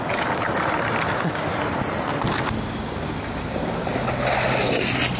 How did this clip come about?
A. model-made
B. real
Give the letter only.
B